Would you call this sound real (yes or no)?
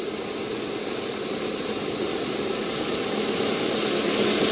yes